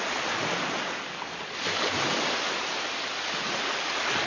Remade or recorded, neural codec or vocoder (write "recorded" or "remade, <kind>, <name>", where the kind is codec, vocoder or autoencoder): recorded